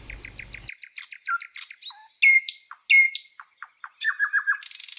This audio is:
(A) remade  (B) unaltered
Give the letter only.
B